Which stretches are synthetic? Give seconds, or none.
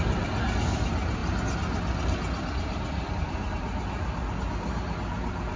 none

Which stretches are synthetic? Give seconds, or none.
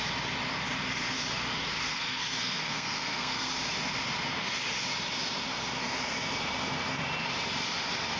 1.9-3.5 (codec, SNAC)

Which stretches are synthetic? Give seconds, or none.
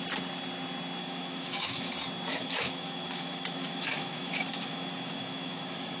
1.0-1.9 (autoencoder, DAC-VAE); 2.3-6.0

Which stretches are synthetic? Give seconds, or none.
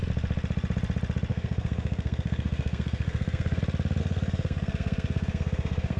1.3-3.6 (codec, SNAC); 4.0-6.0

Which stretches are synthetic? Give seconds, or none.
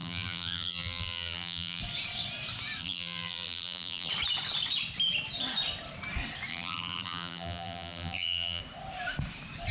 0.0-1.8 (vocoder, BigVGAN v2); 2.8-4.1; 6.5-8.6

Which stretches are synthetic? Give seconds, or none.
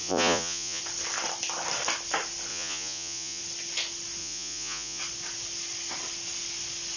0.0-0.8 (vocoder, Vocos); 2.5-3.4; 4.2-5.0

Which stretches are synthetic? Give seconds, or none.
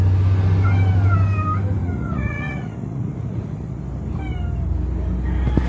1.8-3.8 (vocoder, Vocos)